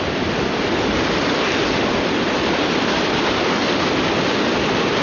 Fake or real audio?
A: real